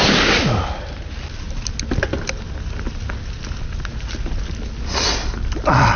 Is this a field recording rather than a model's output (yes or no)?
yes